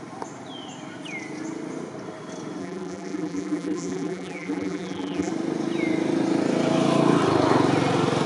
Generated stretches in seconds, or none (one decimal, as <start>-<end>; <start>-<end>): 2.6-5.3